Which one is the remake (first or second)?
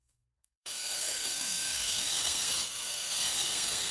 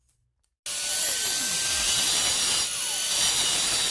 first